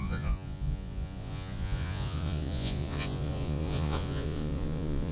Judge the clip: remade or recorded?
remade